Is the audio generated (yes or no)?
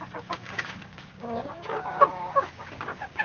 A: yes